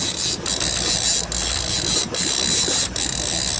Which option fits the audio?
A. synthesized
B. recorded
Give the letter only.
B